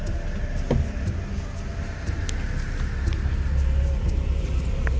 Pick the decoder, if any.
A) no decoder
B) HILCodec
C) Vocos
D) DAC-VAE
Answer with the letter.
A